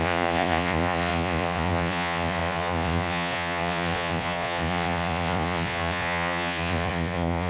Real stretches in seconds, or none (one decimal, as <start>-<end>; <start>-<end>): none